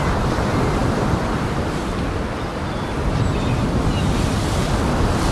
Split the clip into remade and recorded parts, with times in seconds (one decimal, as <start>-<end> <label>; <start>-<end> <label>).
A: 0.0-5.3 recorded